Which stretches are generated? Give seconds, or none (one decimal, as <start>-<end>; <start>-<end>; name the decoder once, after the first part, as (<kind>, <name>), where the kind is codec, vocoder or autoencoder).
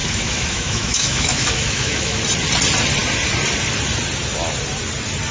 0.0-2.2 (autoencoder, DAC-VAE)